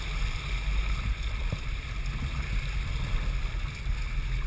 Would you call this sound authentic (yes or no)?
yes